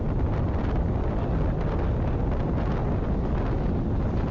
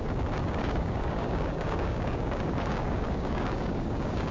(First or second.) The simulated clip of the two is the second